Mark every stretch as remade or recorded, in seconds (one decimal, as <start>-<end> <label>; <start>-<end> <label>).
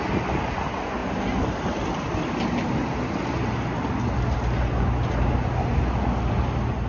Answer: 0.0-6.9 recorded